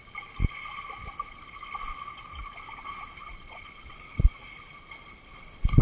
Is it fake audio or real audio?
real